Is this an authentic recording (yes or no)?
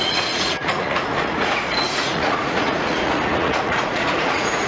no